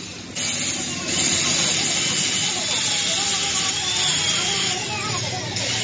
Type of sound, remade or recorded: recorded